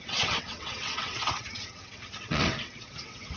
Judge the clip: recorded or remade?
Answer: remade